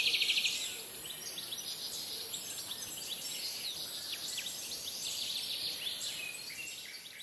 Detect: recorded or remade recorded